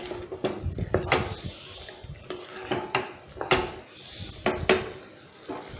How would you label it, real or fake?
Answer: real